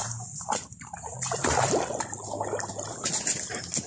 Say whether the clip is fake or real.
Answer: real